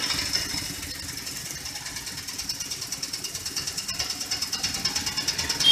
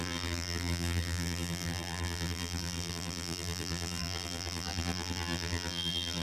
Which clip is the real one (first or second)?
first